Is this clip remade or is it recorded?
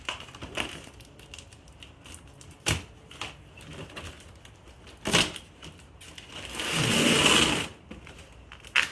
recorded